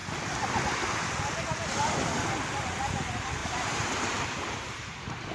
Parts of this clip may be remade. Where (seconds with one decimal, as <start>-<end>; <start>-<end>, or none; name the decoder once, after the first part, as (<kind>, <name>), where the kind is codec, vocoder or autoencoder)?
3.4-5.3 (vocoder, BigVGAN v2)